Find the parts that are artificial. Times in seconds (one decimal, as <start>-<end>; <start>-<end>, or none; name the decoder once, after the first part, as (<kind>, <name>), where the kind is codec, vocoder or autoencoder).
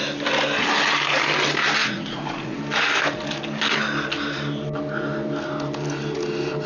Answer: 1.8-2.6 (vocoder, Vocos)